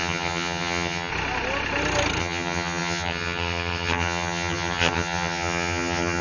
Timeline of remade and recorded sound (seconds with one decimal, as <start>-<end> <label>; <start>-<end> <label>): 0.0-1.1 remade; 1.1-2.2 recorded; 2.2-6.2 remade